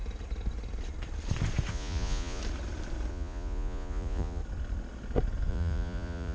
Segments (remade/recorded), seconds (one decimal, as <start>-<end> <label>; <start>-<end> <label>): 0.0-1.7 recorded; 1.7-2.4 remade; 2.4-3.1 recorded; 3.1-4.4 remade; 4.4-5.5 recorded; 5.5-6.3 remade